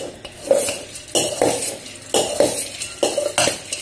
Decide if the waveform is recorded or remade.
recorded